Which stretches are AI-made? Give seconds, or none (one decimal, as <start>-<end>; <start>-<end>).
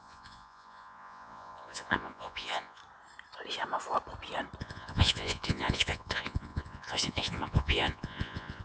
0.0-2.8; 4.6-8.6